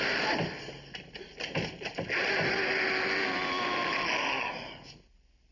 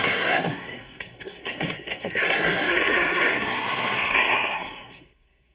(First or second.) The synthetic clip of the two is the second